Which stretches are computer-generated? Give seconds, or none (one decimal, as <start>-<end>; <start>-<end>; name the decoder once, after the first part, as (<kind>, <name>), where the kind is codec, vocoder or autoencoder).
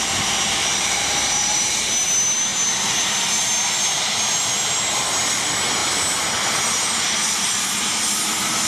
0.7-1.9 (vocoder, BigVGAN v2)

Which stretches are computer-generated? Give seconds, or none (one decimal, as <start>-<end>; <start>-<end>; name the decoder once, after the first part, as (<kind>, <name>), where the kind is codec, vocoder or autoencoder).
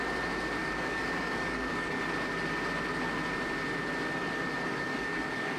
0.6-2.0 (codec, DAC); 4.7-5.6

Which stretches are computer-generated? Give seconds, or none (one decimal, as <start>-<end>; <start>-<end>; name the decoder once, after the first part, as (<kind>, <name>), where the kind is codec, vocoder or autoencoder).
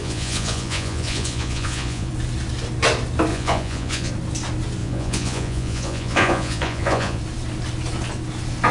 0.0-2.1 (vocoder, Vocos); 3.3-4.1; 4.8-7.2